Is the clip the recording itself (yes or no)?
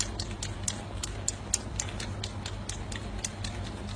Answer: yes